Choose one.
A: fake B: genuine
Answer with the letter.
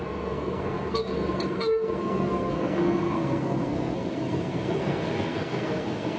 A